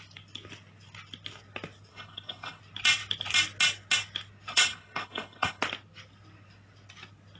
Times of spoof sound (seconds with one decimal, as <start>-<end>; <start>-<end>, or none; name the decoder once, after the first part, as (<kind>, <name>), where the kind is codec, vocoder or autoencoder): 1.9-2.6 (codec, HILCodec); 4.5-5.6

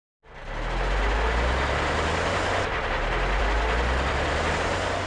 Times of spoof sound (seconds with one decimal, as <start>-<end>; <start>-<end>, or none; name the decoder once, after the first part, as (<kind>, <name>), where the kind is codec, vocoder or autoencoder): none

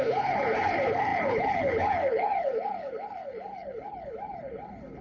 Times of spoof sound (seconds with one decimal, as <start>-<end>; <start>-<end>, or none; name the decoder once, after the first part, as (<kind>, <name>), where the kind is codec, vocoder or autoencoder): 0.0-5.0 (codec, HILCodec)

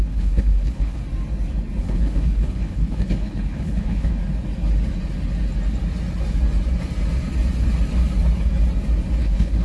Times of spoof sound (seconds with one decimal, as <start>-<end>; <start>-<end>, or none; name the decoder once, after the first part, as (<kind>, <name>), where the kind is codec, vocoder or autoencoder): 0.0-1.0 (codec, HILCodec); 1.8-4.2; 9.2-9.6